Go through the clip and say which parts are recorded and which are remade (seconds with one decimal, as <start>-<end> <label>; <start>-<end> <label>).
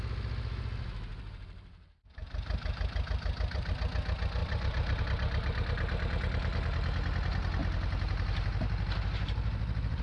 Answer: 0.0-1.1 recorded; 1.1-3.7 remade; 3.7-4.4 recorded; 4.4-5.0 remade; 5.0-7.6 recorded; 7.6-10.0 remade